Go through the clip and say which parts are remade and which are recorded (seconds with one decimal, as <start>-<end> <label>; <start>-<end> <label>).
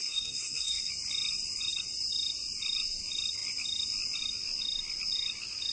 0.0-0.9 remade; 0.9-5.7 recorded